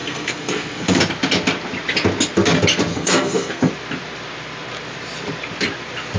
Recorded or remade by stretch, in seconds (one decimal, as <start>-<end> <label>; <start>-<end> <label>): 0.0-1.0 remade; 1.0-2.9 recorded; 2.9-3.7 remade; 3.7-6.2 recorded